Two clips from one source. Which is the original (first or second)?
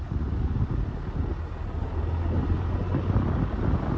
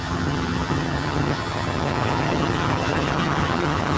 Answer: first